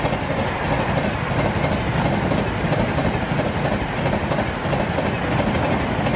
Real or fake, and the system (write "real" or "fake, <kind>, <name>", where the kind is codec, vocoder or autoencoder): real